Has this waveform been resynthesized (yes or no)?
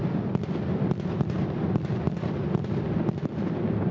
no